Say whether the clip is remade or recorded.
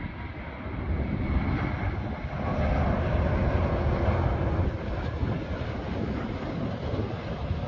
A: recorded